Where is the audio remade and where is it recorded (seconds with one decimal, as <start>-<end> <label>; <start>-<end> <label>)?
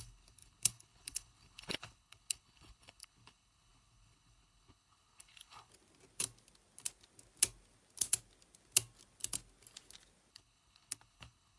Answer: 0.0-5.7 remade; 5.7-10.3 recorded; 10.3-11.6 remade